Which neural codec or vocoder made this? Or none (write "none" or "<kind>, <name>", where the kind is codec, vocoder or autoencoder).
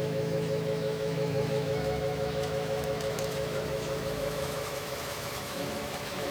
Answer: autoencoder, DAC-VAE